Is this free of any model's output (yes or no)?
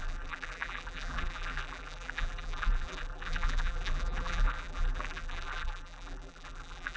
no